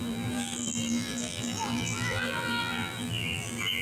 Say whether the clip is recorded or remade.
remade